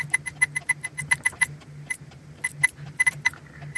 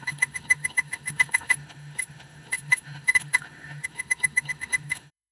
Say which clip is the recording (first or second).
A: first